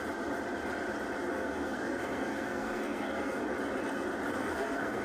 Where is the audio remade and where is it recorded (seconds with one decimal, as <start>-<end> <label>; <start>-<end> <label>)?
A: 0.0-1.3 recorded; 1.3-3.4 remade; 3.4-4.3 recorded; 4.3-5.0 remade